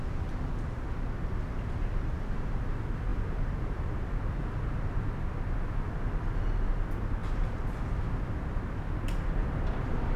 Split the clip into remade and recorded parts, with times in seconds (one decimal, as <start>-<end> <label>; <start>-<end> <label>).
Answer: 0.0-9.4 recorded; 9.4-10.2 remade